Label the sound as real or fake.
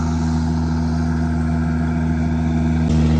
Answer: real